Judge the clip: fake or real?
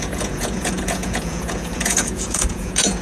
fake